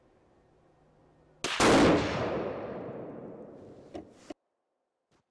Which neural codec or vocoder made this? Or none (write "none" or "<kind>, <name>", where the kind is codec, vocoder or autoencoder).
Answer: none